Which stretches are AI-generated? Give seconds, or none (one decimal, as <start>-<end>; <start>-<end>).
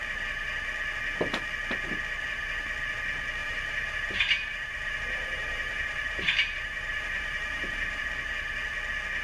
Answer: 3.4-8.0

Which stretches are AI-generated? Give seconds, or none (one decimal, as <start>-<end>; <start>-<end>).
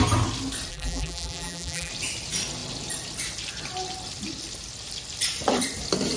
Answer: 0.7-1.9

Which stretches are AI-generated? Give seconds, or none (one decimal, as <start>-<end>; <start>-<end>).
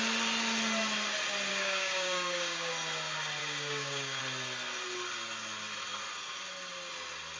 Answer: 1.5-2.7; 3.4-4.2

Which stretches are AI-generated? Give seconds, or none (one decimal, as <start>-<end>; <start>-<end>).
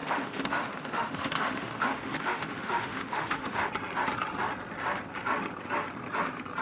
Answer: 0.0-3.7